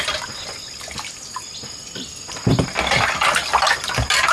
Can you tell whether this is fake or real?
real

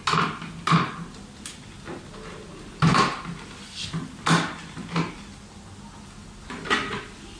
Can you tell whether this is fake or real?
real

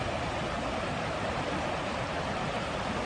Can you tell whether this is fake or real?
real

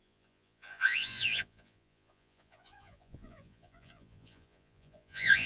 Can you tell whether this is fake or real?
fake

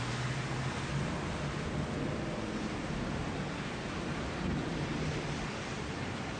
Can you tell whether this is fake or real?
real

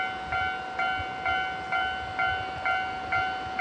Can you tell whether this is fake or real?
real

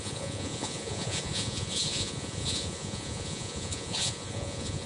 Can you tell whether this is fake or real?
fake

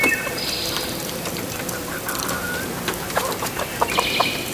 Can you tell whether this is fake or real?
real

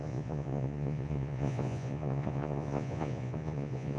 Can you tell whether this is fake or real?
fake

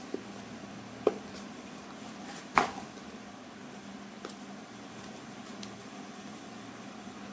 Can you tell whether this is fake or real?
real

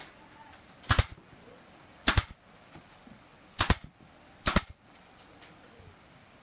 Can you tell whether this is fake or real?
real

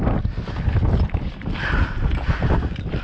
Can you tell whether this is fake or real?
real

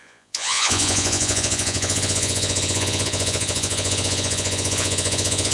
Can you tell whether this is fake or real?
fake